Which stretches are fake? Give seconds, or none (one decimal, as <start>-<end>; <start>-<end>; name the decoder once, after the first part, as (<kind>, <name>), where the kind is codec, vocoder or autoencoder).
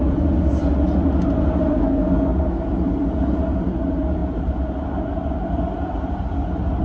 1.9-2.6 (codec, SNAC)